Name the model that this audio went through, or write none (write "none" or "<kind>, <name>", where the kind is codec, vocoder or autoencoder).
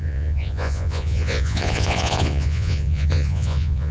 vocoder, Vocos